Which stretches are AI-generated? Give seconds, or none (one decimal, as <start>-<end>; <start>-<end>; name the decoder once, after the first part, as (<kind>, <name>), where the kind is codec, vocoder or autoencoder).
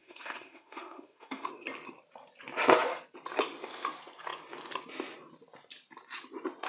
0.0-1.5 (autoencoder, DAC-VAE)